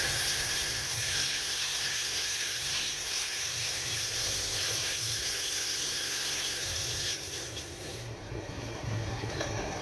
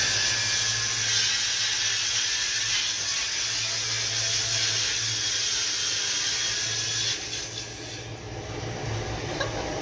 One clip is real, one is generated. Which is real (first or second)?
second